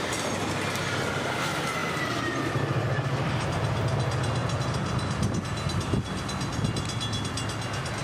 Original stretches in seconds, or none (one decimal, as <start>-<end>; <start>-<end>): 0.0-4.4; 5.4-8.0